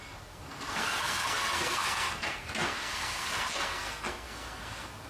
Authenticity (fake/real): fake